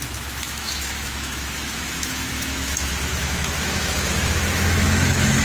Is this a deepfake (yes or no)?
yes